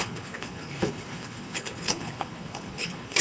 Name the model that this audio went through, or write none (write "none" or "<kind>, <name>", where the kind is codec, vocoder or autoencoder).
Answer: codec, HILCodec